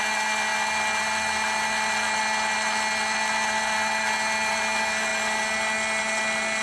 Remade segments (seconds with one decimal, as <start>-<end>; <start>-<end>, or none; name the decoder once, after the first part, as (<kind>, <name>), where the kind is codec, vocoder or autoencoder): none

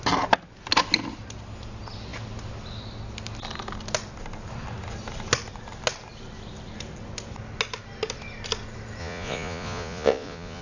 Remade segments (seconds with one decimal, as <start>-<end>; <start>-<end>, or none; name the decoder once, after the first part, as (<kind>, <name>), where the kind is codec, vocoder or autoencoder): 9.0-10.6 (vocoder, Vocos)

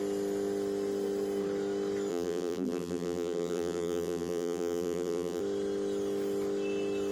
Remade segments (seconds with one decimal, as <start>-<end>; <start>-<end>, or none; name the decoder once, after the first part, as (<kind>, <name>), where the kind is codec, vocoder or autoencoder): 2.1-5.4 (vocoder, BigVGAN v2)

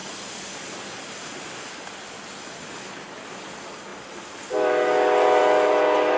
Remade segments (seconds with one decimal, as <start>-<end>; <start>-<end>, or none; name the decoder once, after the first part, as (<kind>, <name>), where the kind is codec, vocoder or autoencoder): none

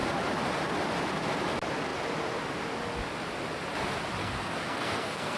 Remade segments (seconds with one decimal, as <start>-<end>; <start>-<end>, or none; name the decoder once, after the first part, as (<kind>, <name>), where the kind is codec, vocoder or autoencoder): 4.2-5.4 (codec, SNAC)

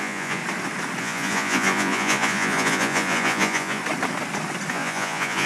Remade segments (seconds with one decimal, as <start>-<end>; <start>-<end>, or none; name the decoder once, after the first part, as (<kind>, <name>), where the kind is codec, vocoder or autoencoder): 0.0-0.4 (vocoder, Vocos); 1.0-3.8; 4.7-5.5